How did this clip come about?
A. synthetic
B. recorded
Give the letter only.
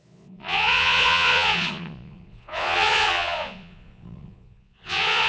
A